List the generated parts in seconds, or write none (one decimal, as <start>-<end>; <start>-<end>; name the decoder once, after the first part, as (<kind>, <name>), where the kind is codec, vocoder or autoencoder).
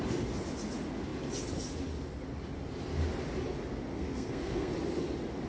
3.9-4.7 (codec, SNAC)